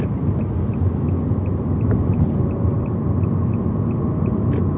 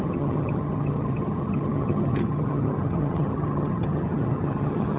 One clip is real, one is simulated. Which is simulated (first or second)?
second